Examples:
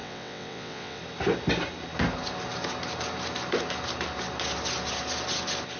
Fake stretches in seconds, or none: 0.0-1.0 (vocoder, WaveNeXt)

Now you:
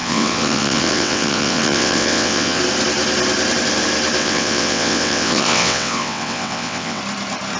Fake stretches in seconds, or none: 0.0-2.6 (vocoder, WaveNeXt); 4.2-7.0

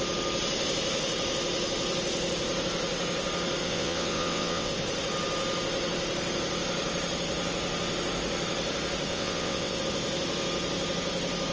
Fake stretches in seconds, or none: 3.6-4.7 (vocoder, WaveNeXt); 9.1-9.8

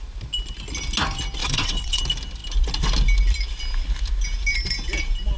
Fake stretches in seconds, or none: 1.4-2.0 (vocoder, WaveNeXt)